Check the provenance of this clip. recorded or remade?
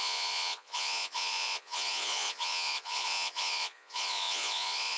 remade